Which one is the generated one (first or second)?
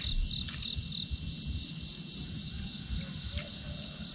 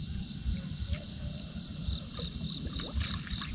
second